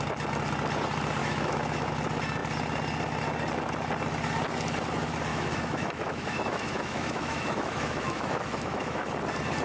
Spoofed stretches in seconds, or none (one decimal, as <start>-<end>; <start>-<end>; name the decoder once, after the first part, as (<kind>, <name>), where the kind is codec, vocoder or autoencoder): 1.2-1.9 (autoencoder, DAC-VAE); 5.3-9.1